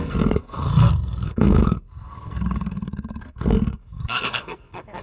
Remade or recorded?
remade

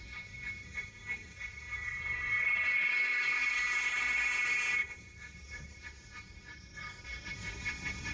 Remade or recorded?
remade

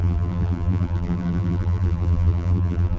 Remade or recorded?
remade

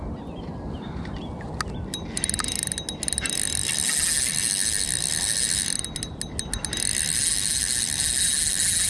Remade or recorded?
recorded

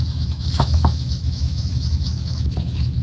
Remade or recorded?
remade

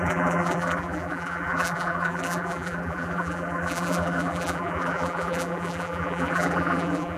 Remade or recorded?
remade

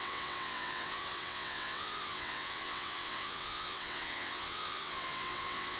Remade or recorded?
remade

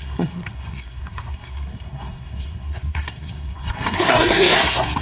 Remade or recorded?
remade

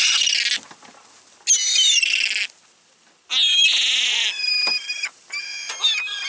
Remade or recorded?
recorded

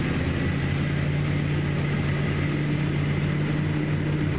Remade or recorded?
recorded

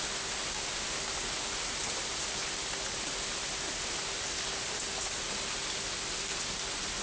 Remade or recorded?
recorded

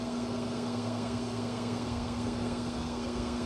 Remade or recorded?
remade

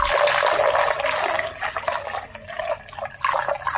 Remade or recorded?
recorded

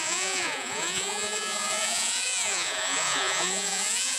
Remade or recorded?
remade